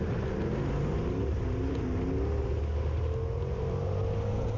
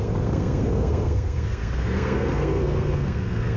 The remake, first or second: second